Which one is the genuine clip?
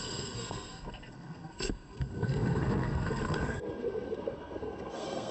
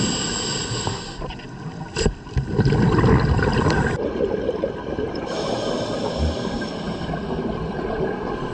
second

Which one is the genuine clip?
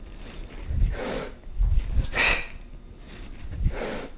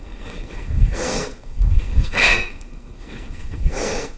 first